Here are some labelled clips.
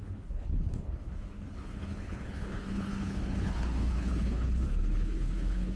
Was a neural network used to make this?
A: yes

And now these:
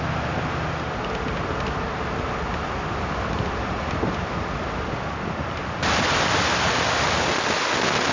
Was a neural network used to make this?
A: no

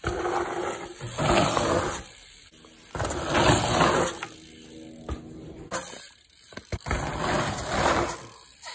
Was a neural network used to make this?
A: no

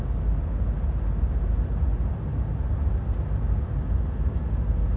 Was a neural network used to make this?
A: no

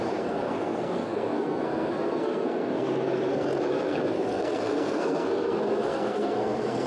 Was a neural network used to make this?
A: yes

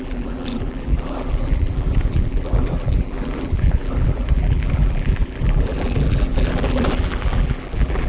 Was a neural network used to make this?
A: yes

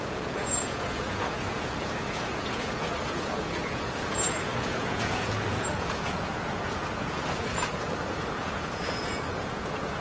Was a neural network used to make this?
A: yes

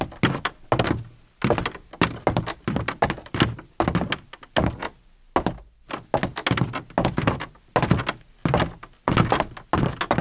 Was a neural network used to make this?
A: no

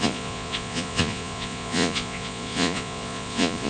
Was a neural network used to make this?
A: yes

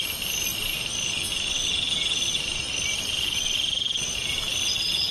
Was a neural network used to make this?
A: no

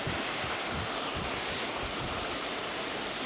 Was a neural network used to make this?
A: no